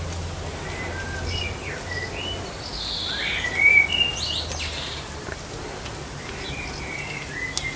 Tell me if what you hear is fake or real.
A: real